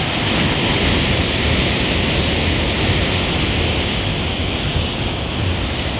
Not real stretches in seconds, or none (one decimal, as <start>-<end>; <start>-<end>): 4.4-5.3